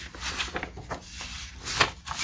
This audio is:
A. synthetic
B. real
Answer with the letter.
B